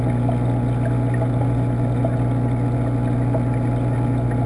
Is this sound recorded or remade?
recorded